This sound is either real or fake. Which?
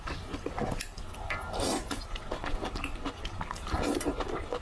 real